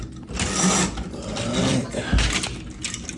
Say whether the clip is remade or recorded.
recorded